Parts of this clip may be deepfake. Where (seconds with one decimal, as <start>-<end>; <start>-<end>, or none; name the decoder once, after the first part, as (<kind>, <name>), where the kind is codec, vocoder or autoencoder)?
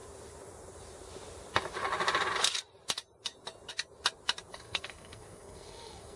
4.5-6.2 (codec, SNAC)